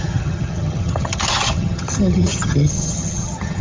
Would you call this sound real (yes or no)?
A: no